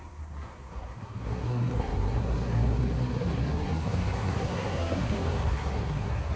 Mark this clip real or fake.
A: fake